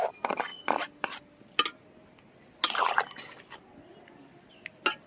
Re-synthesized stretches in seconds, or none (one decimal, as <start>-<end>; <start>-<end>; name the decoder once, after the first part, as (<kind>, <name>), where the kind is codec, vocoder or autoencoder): none

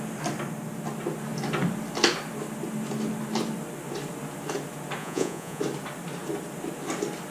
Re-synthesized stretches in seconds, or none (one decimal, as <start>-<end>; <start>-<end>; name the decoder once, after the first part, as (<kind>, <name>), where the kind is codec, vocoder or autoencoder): 5.0-5.6 (vocoder, Vocos)